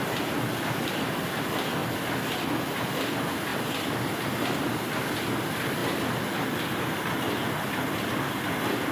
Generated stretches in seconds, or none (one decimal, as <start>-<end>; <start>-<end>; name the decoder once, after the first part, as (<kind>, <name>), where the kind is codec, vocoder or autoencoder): 0.0-1.8 (vocoder, BigVGAN v2); 2.7-3.5; 5.2-5.8; 7.5-8.9

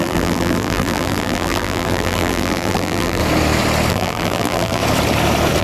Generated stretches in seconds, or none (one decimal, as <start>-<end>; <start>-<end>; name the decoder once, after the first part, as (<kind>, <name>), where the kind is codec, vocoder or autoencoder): 0.0-3.2 (vocoder, BigVGAN v2); 3.9-4.8